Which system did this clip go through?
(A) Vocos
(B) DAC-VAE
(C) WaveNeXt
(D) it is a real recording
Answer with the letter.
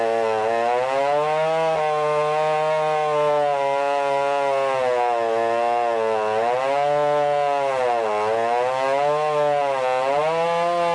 D